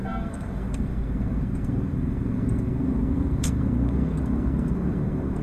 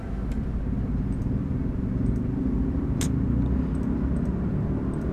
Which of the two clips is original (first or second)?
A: second